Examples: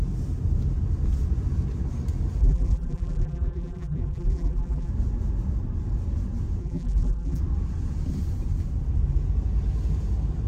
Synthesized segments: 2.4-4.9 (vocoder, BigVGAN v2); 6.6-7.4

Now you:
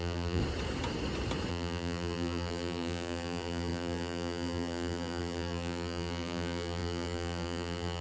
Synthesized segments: 0.0-0.4 (vocoder, BigVGAN v2); 1.5-8.0

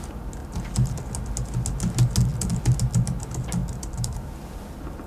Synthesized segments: 0.4-1.0 (vocoder, BigVGAN v2); 2.3-2.9; 3.6-5.1

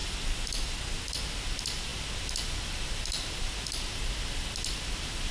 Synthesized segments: 0.0-1.2 (vocoder, BigVGAN v2)

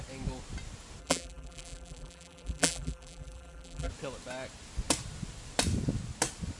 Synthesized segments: 1.0-3.9 (vocoder, BigVGAN v2)

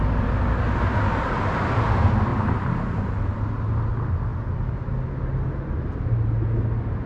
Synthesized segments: 0.9-1.8 (vocoder, BigVGAN v2); 2.3-3.1

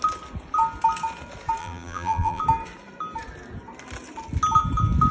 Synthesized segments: 1.6-2.4 (vocoder, BigVGAN v2)